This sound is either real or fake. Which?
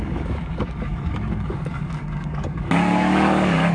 fake